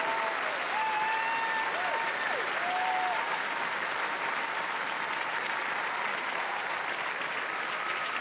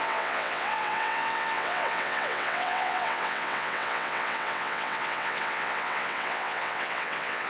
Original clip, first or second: first